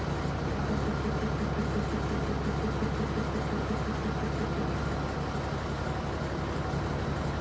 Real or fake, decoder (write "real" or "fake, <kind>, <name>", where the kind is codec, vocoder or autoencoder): real